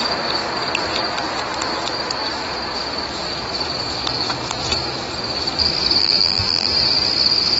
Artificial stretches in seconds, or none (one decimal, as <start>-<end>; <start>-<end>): 6.0-6.7